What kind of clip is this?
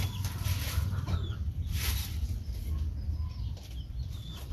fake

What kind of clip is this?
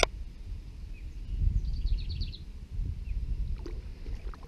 real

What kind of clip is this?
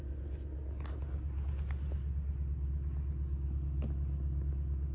real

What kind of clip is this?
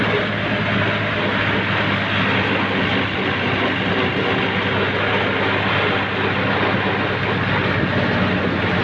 real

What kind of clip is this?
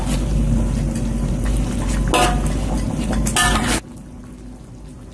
real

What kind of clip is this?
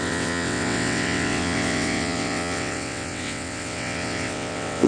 fake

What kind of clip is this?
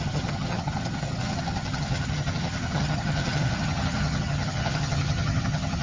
fake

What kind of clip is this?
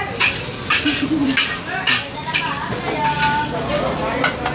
real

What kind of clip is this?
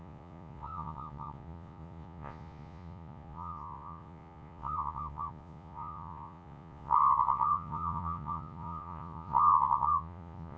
fake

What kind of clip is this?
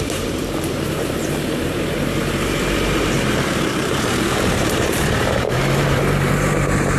fake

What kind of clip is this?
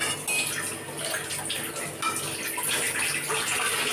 real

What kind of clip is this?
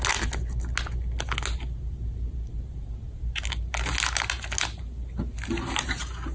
real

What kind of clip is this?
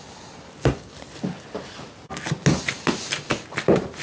real